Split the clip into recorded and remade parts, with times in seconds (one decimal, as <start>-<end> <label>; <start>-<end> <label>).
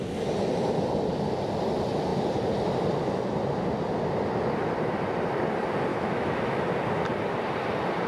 0.0-5.9 recorded; 5.9-6.6 remade; 6.6-8.1 recorded